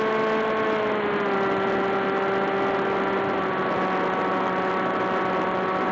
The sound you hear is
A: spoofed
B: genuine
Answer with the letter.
B